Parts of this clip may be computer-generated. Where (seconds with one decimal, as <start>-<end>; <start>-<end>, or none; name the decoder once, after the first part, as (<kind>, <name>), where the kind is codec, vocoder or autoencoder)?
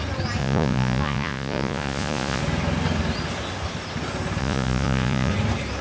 0.4-2.4 (vocoder, Vocos); 4.4-5.3